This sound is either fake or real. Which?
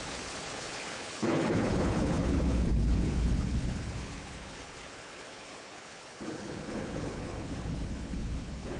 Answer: fake